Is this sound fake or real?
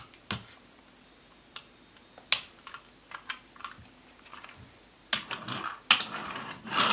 real